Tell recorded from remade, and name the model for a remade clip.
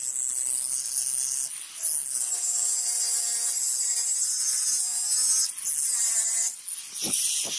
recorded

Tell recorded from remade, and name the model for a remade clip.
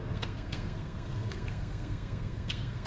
remade, codec, SNAC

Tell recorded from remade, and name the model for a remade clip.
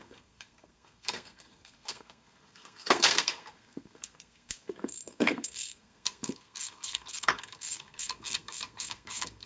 remade, codec, SNAC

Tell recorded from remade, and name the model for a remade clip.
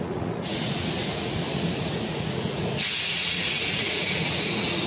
remade, vocoder, Vocos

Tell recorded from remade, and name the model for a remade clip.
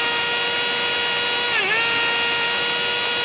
recorded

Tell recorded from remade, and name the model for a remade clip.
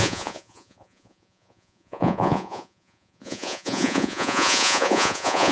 remade, vocoder, Vocos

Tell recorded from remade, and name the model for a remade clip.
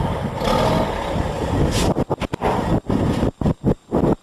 recorded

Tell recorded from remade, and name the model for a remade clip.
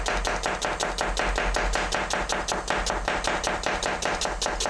recorded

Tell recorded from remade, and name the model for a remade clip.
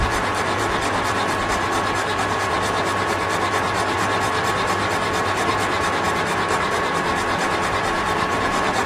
remade, vocoder, BigVGAN v2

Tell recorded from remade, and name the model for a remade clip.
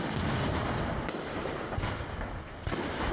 recorded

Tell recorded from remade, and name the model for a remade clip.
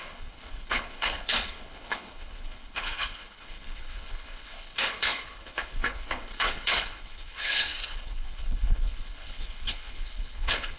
remade, codec, HILCodec